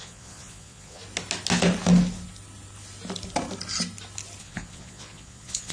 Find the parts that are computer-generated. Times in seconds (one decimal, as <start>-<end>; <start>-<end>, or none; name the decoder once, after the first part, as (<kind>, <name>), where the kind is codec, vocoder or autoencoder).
0.0-1.0 (vocoder, Vocos); 4.4-5.7